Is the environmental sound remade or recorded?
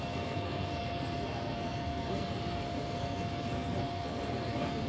remade